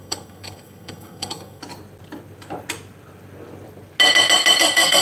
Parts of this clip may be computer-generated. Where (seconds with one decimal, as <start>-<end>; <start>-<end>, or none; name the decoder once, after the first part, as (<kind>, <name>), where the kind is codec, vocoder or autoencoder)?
0.0-1.6 (codec, SNAC); 4.6-5.0